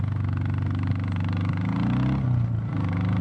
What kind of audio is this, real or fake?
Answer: real